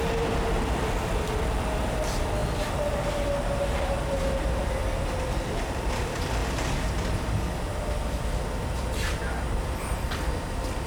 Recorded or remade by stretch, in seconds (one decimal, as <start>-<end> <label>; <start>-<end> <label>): 0.0-2.4 remade; 2.4-3.8 recorded; 3.8-4.8 remade; 4.8-5.5 recorded; 5.5-6.4 remade; 6.4-8.6 recorded; 8.6-10.9 remade